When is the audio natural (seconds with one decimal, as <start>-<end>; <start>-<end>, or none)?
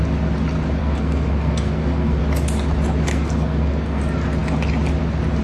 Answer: 0.0-0.8; 2.2-3.1; 4.0-5.4